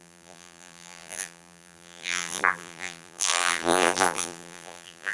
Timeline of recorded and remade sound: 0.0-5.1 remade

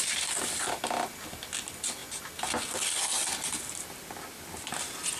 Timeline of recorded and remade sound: 0.0-5.2 recorded

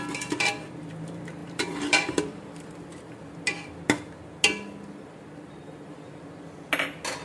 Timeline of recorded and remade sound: 0.0-1.4 recorded; 1.4-3.3 remade; 3.3-5.6 recorded; 5.6-6.2 remade; 6.2-7.2 recorded

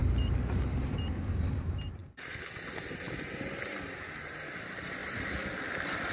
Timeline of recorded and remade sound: 0.0-5.0 recorded; 5.0-6.1 remade

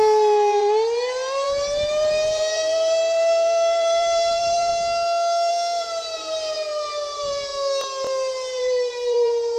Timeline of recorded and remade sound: 0.0-4.7 remade; 4.7-5.5 recorded; 5.5-7.5 remade; 7.5-8.6 recorded; 8.6-9.6 remade

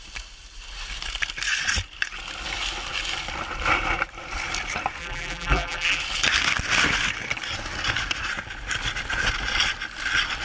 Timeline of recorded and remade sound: 0.0-5.0 recorded; 5.0-6.0 remade; 6.0-10.4 recorded